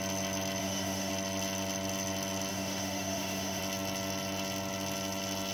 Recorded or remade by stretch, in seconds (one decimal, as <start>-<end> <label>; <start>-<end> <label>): 0.0-0.6 recorded; 0.6-1.1 remade; 1.1-2.5 recorded; 2.5-3.6 remade; 3.6-5.5 recorded